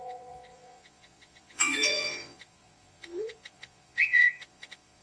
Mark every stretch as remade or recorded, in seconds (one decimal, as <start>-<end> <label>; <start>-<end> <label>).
0.0-5.0 remade